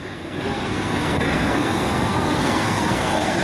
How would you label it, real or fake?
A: fake